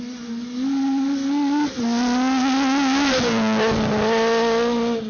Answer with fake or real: real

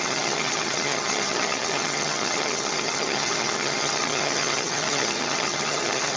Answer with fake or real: fake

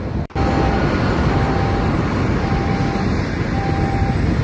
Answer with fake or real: real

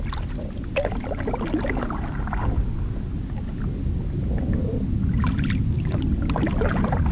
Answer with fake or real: real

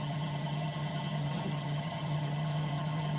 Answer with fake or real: fake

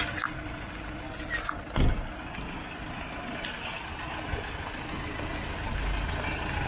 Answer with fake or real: real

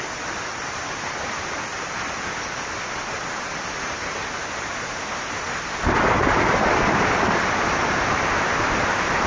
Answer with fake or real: real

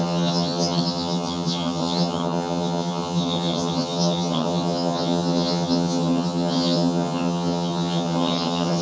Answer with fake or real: fake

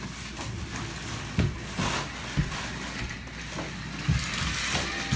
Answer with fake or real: real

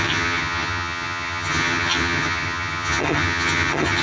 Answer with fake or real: fake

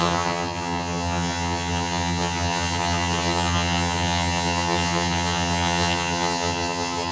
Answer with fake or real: fake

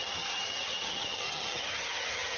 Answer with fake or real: fake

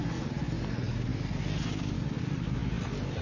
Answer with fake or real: real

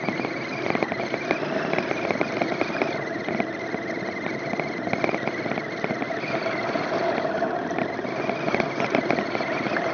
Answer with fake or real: real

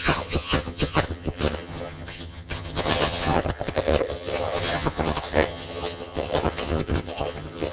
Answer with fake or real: fake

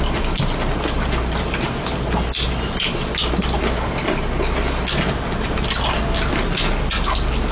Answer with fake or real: real